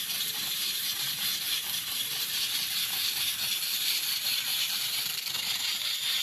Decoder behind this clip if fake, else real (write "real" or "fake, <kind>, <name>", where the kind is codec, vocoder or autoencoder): fake, vocoder, BigVGAN v2